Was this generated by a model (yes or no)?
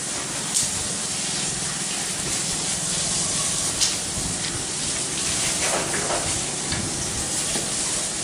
yes